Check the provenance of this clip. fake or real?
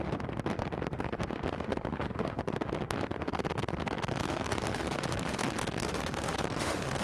fake